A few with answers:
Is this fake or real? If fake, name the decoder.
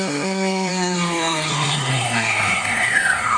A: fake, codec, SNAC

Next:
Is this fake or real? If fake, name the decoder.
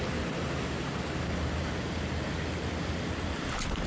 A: real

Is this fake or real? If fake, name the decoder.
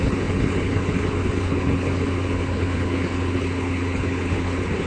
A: fake, codec, HILCodec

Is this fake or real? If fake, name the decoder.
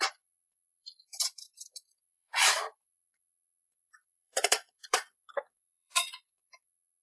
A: fake, vocoder, Vocos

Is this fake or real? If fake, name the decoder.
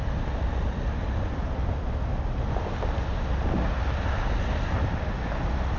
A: real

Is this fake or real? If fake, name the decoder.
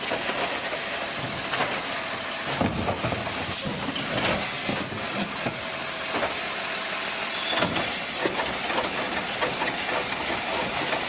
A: real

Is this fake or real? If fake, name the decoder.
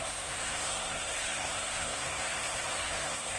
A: fake, codec, SNAC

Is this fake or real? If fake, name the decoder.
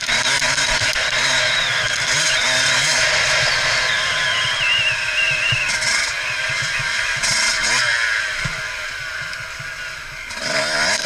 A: real